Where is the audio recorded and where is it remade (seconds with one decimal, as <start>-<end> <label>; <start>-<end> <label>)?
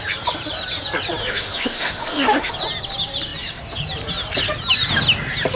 0.0-1.2 recorded; 1.2-2.5 remade; 2.5-5.6 recorded